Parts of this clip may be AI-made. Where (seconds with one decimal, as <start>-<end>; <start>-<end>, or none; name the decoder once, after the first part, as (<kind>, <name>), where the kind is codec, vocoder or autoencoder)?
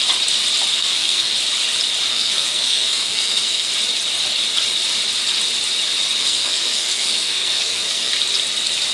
0.7-1.3 (codec, SNAC); 2.1-3.7; 6.2-8.1